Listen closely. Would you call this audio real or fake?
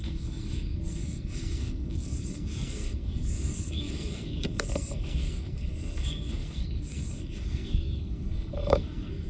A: fake